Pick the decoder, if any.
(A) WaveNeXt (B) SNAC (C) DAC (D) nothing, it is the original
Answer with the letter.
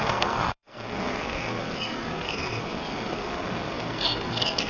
B